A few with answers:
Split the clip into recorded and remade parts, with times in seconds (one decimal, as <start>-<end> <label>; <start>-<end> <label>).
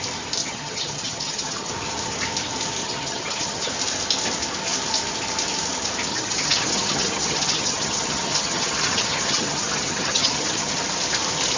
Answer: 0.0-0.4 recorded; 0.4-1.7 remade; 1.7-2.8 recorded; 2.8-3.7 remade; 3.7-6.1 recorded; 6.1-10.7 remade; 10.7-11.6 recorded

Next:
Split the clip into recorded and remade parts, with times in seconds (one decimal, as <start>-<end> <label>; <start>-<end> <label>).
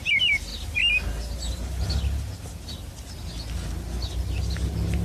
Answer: 0.0-5.0 recorded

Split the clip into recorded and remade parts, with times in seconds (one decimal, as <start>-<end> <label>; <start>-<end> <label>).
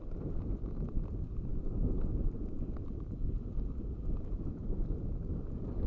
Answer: 0.0-5.9 recorded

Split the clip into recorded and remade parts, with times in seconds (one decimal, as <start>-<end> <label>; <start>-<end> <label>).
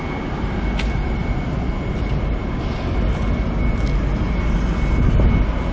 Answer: 0.0-5.7 recorded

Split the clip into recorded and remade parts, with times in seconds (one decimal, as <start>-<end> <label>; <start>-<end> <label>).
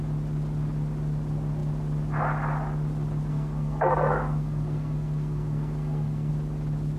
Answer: 0.0-3.3 recorded; 3.3-6.3 remade; 6.3-7.0 recorded